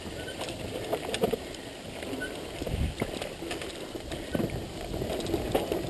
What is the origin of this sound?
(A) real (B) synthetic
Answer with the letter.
B